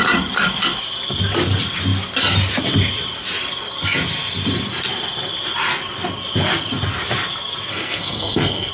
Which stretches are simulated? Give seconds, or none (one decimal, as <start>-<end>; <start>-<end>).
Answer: 7.7-8.7